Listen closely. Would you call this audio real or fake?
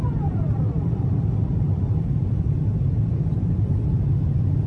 fake